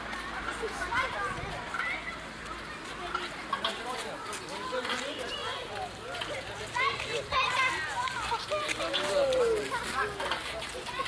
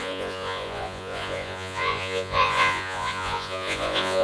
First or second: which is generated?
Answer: second